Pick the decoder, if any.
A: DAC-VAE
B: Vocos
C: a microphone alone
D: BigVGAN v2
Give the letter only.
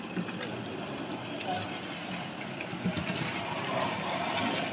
C